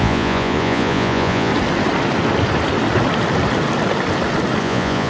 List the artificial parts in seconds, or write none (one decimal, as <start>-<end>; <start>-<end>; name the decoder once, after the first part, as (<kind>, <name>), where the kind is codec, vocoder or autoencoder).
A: 0.0-1.5 (vocoder, Vocos); 4.6-5.1